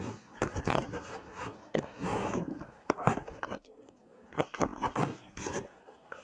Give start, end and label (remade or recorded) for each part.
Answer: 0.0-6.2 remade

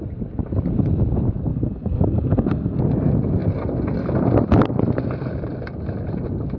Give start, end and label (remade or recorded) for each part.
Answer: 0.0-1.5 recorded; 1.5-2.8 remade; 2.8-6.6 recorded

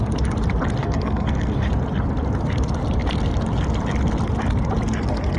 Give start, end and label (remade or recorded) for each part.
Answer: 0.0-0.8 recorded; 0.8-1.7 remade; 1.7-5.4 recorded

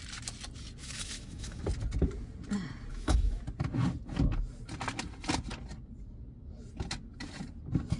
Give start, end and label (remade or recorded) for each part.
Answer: 0.0-0.8 recorded; 0.8-1.6 remade; 1.6-2.9 recorded; 2.9-3.4 remade; 3.4-8.0 recorded

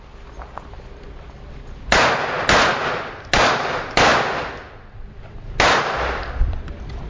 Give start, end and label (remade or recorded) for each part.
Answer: 0.0-7.1 recorded

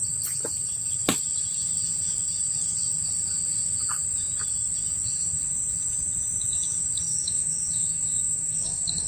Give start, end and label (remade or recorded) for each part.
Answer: 0.0-7.1 recorded; 7.1-9.1 remade

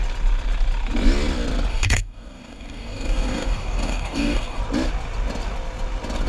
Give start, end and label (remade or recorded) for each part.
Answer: 0.0-1.7 recorded; 1.7-4.6 remade; 4.6-6.3 recorded

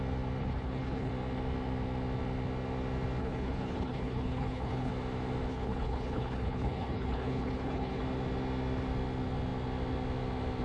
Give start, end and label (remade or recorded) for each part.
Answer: 0.0-0.4 recorded; 0.4-1.1 remade; 1.1-3.2 recorded; 3.2-4.9 remade; 4.9-5.5 recorded; 5.5-8.0 remade; 8.0-10.6 recorded